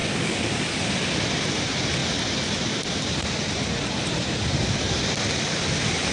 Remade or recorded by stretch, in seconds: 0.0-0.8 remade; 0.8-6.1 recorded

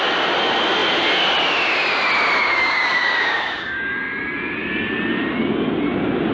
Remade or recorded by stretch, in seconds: 0.0-2.4 recorded; 2.4-3.9 remade; 3.9-6.3 recorded

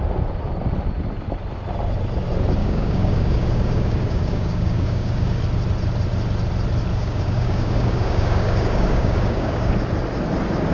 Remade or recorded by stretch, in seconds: 0.0-2.6 recorded; 2.6-5.4 remade; 5.4-6.9 recorded; 6.9-9.7 remade; 9.7-10.7 recorded

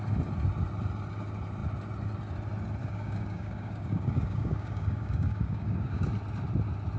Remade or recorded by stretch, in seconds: 0.0-2.8 recorded; 2.8-6.1 remade; 6.1-7.0 recorded

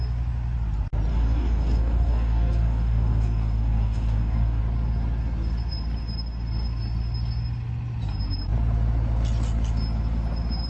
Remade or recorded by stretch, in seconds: 0.0-1.1 recorded; 1.1-4.6 remade; 4.6-10.7 recorded

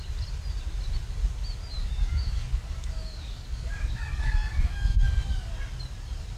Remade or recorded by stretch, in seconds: 0.0-1.8 recorded; 1.8-5.5 remade; 5.5-6.4 recorded

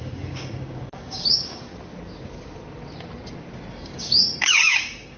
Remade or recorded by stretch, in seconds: 0.0-1.7 remade; 1.7-3.7 recorded; 3.7-5.2 remade

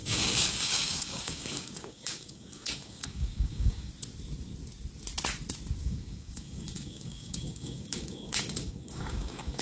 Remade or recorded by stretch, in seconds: 0.0-3.9 remade; 3.9-5.8 recorded; 5.8-9.6 remade